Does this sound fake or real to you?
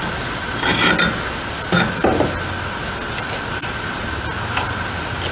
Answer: real